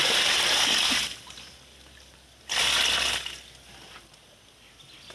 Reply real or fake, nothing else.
real